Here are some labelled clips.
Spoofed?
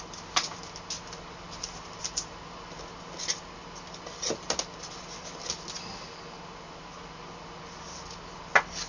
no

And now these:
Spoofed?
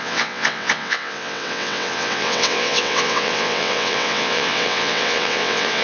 yes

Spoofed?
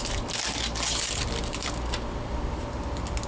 no